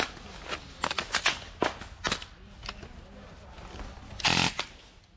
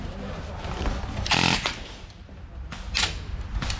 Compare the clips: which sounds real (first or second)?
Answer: first